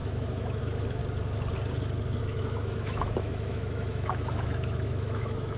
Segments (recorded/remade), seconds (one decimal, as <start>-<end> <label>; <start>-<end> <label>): 0.0-1.0 remade; 1.0-2.2 recorded; 2.2-5.6 remade